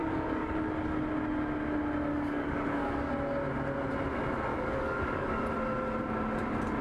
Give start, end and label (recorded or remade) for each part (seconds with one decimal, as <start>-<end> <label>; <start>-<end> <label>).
0.0-0.7 remade; 0.7-2.1 recorded; 2.1-3.1 remade; 3.1-4.5 recorded; 4.5-5.4 remade; 5.4-6.8 recorded